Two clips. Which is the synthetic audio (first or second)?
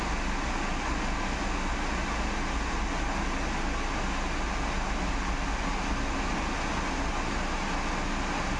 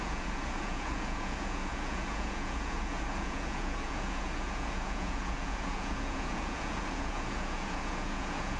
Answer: second